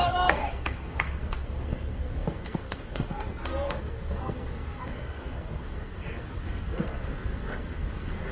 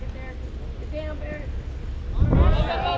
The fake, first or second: first